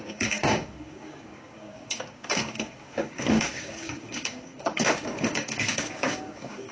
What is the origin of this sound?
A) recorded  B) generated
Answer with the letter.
B